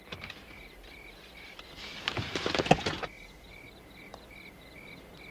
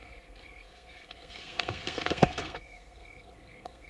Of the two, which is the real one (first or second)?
first